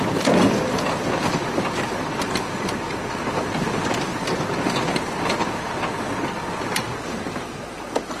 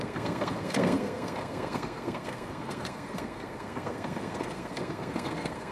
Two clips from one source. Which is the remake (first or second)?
second